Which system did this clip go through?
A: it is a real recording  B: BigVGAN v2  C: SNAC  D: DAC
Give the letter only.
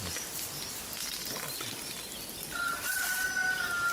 A